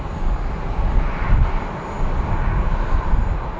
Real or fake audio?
real